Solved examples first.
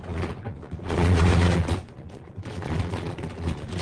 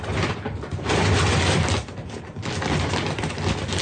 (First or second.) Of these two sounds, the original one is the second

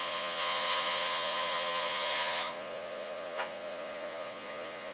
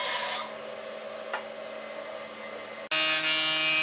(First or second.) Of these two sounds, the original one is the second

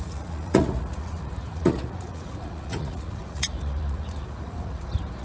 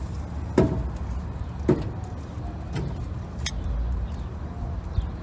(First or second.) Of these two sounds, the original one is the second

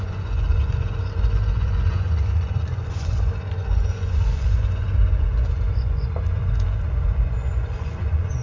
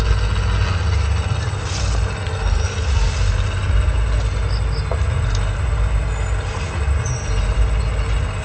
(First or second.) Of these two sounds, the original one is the second